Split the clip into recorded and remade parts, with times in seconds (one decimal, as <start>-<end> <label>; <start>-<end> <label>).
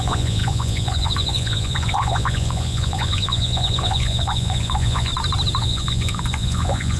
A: 0.0-5.1 remade; 5.1-5.6 recorded; 5.6-7.0 remade